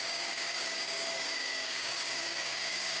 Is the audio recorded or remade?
remade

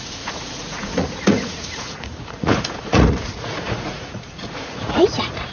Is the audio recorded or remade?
remade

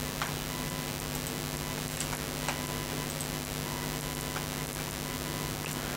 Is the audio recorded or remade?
recorded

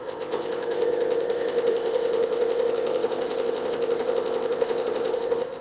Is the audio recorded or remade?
remade